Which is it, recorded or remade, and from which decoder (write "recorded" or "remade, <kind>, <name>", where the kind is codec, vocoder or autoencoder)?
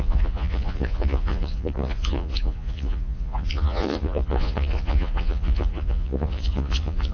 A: remade, vocoder, Vocos